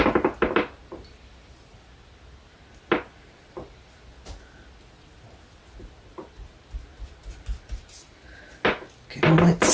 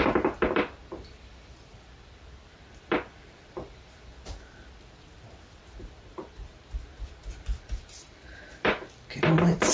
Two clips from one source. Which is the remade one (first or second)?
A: second